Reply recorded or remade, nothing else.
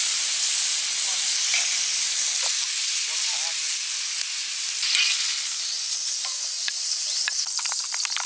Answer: recorded